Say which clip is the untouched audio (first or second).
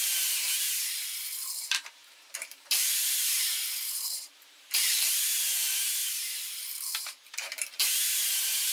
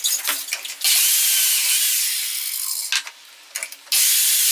second